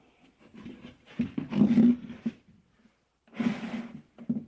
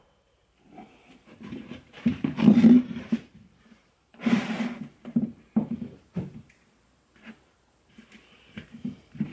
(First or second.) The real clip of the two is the first